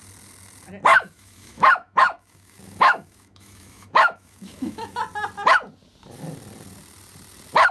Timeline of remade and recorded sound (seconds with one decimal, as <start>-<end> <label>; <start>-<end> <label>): 0.0-0.9 recorded; 0.9-5.0 remade; 5.0-7.7 recorded